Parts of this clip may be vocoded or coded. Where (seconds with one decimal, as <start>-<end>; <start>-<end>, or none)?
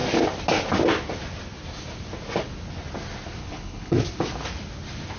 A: 3.4-4.0